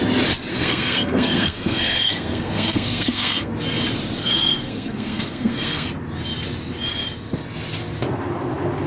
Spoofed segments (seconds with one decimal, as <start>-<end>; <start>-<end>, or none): 0.5-3.5; 4.2-5.9